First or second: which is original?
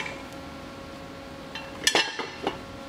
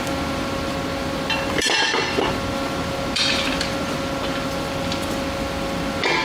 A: first